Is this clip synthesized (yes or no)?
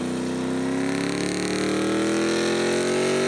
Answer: no